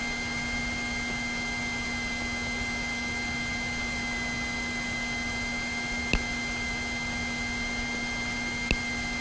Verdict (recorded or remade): recorded